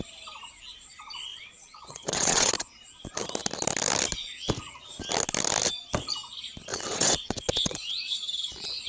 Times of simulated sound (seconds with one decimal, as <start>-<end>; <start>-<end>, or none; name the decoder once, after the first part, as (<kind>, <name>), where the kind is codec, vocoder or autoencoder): 1.3-2.5 (vocoder, WaveNeXt); 6.7-8.5